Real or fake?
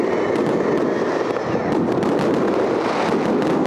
real